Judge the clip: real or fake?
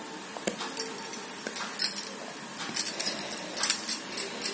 real